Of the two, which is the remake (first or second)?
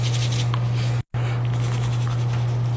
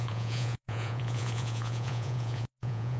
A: second